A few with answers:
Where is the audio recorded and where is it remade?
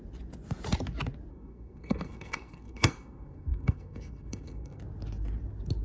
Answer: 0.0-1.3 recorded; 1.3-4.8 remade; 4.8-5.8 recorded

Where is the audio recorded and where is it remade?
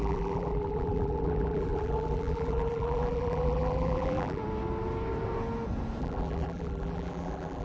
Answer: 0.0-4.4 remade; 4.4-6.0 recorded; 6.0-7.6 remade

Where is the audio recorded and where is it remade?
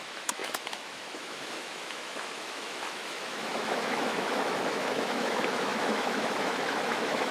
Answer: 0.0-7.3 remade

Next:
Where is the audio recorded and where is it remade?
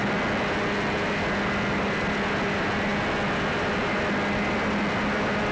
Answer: 0.0-5.5 recorded